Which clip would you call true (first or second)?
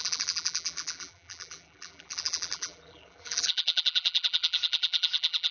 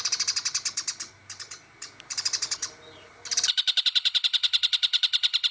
second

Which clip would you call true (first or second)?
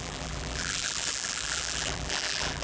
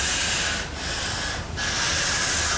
second